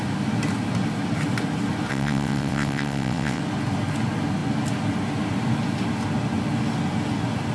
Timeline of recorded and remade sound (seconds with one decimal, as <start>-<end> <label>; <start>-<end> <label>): 0.0-1.9 recorded; 1.9-3.4 remade; 3.4-7.5 recorded